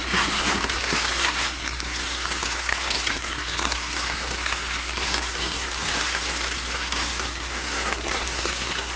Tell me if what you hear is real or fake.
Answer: fake